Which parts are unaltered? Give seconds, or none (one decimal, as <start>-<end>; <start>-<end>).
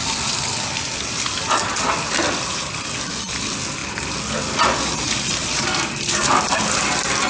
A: 0.0-7.3